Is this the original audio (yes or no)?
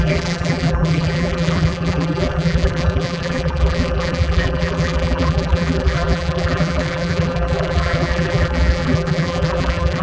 no